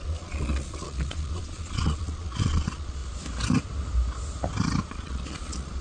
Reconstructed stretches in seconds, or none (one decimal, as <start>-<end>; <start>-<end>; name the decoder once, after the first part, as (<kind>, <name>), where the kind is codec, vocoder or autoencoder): 0.0-3.0 (vocoder, Vocos); 4.9-5.8

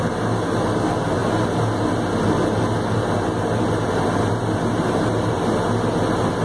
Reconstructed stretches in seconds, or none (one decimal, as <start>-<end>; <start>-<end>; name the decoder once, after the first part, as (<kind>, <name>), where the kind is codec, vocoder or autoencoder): none

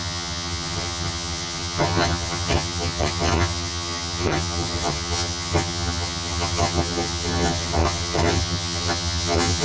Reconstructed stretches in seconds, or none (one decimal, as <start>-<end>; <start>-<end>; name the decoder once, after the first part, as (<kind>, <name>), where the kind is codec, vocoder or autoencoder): 0.0-9.6 (vocoder, HiFi-GAN)

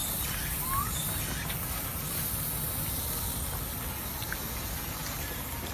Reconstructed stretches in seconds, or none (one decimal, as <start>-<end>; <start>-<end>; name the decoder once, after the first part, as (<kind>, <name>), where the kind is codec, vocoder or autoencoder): none

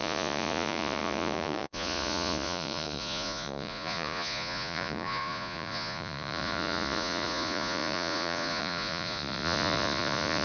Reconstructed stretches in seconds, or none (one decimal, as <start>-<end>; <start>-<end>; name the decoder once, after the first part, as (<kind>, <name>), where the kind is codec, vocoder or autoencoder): 0.0-10.4 (vocoder, Vocos)

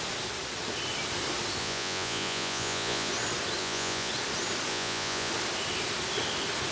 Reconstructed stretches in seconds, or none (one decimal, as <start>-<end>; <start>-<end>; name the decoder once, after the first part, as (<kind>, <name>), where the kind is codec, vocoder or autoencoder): 1.6-3.1 (vocoder, Vocos); 3.6-4.1; 4.7-5.3